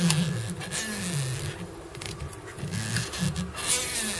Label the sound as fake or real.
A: real